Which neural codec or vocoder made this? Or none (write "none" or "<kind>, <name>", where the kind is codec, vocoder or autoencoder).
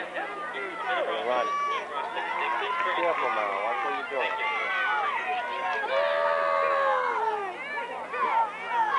none